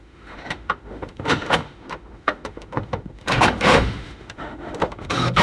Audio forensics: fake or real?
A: fake